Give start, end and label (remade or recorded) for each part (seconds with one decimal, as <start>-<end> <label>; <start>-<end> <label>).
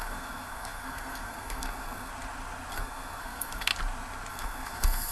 0.0-2.1 remade; 2.1-2.7 recorded; 2.7-3.7 remade; 3.7-4.3 recorded; 4.3-5.1 remade